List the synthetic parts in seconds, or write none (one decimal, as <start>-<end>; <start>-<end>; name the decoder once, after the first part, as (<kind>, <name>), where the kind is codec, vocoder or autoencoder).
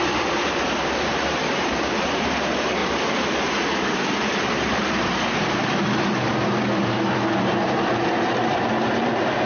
0.0-9.5 (vocoder, BigVGAN v2)